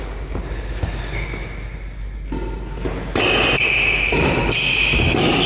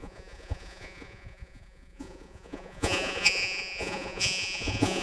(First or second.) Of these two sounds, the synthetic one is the second